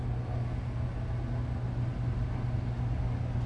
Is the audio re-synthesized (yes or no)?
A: no